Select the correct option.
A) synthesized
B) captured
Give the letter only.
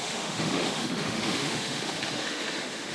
A